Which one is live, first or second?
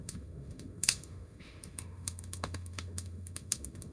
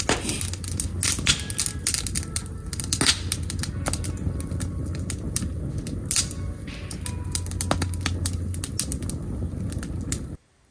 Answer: second